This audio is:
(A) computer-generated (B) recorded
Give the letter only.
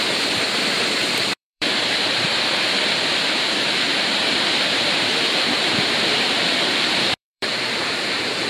A